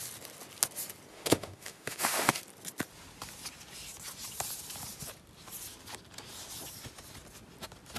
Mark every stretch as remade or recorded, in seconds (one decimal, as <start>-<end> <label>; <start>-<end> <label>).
0.0-1.1 recorded; 1.1-2.4 remade; 2.4-8.0 recorded